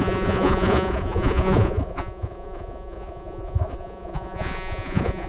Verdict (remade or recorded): remade